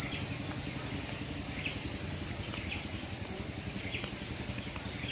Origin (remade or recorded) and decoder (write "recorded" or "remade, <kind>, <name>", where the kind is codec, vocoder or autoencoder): recorded